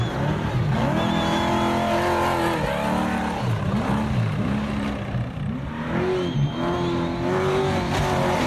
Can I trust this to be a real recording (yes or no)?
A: yes